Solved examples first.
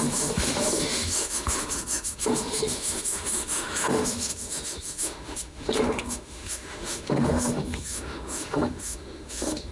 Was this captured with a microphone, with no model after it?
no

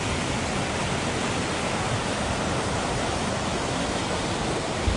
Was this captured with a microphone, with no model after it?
yes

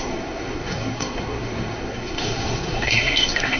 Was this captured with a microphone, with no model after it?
no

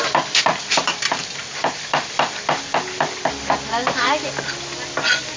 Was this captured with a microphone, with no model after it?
yes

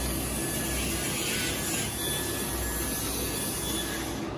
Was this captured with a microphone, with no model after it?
yes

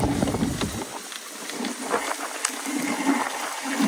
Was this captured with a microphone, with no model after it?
yes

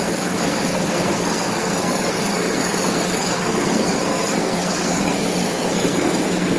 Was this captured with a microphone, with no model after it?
no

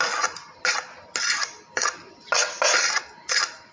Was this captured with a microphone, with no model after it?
yes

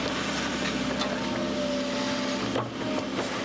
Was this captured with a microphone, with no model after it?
yes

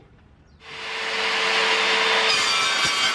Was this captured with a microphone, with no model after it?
yes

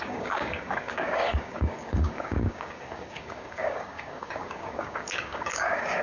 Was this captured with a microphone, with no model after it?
no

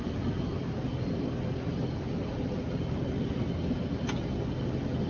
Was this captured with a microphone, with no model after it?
yes